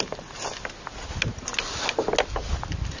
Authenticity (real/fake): real